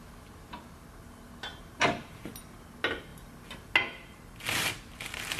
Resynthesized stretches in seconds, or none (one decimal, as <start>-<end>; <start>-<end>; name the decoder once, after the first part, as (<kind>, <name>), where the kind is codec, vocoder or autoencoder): 1.5-2.4 (vocoder, BigVGAN v2)